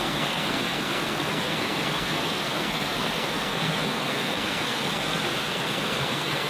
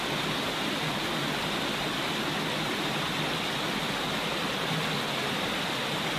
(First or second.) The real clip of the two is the second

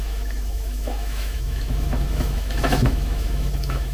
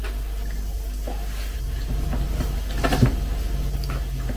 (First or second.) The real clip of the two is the second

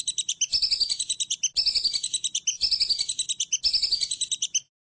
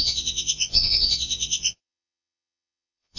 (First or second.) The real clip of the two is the first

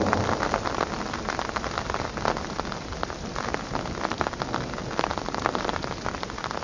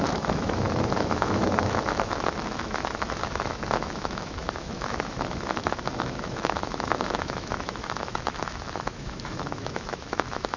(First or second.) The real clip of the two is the first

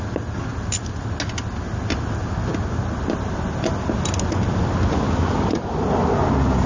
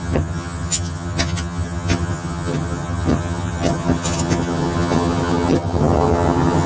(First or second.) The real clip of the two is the first